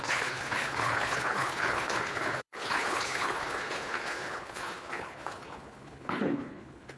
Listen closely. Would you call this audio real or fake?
fake